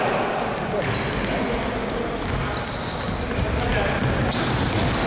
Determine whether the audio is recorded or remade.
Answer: recorded